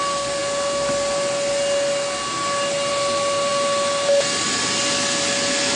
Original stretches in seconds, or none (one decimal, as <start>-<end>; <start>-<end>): 0.0-5.8